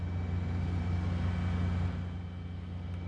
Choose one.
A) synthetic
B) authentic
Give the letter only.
B